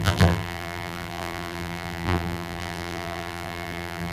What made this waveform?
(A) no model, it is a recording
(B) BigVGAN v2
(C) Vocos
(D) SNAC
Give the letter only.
B